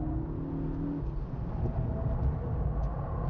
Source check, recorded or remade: recorded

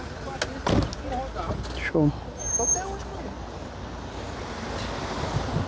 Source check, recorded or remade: recorded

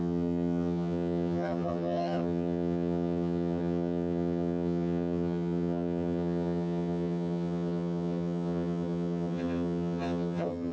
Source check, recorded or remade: remade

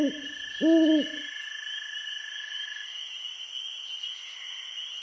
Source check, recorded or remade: recorded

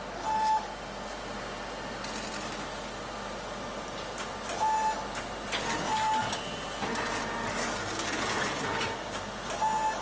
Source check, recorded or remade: recorded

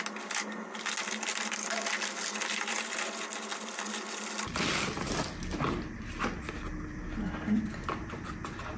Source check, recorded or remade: recorded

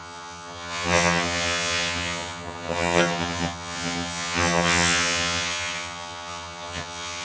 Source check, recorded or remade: remade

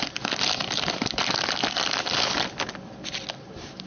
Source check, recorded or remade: recorded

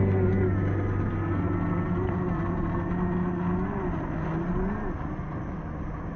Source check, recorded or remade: recorded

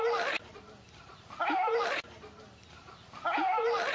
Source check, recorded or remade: recorded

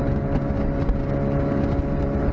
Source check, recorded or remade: recorded